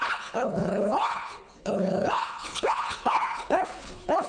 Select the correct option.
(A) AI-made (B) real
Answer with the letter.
A